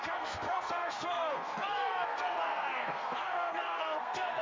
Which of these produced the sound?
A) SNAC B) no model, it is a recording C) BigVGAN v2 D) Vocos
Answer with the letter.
A